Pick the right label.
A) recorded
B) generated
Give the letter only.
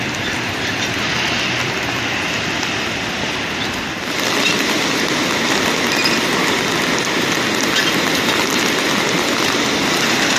A